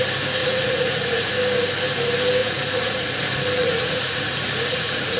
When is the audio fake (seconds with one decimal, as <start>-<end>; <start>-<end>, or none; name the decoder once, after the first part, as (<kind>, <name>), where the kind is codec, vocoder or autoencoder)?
0.4-1.3 (vocoder, Vocos); 2.4-3.2; 3.6-5.2